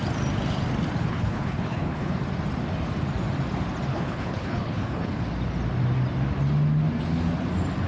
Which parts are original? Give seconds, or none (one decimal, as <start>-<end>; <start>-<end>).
0.0-1.0; 2.1-3.9; 5.2-7.9